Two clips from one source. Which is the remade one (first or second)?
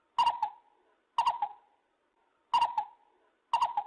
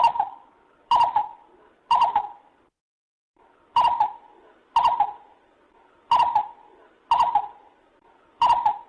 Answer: second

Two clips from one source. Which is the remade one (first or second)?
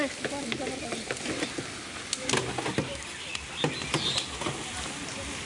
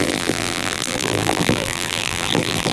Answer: second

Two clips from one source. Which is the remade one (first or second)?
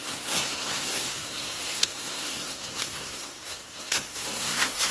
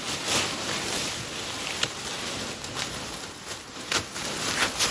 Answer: first